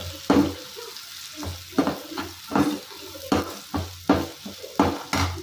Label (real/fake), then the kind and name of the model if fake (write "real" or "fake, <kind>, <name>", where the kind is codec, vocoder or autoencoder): real